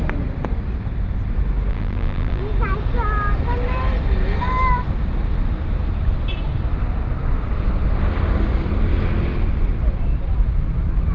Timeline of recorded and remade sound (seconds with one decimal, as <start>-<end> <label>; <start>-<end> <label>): 0.0-1.7 recorded; 1.7-2.4 remade; 2.4-11.1 recorded